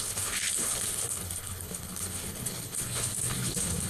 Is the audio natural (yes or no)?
no